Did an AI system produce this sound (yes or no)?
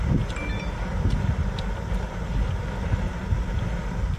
no